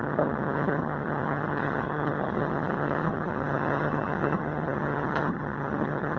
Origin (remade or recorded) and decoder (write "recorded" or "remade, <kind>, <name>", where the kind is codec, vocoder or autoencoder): remade, vocoder, HiFi-GAN